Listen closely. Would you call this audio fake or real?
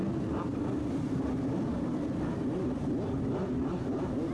real